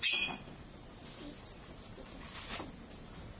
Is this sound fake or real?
real